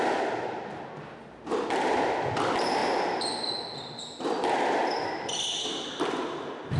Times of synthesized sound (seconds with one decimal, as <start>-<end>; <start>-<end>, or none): none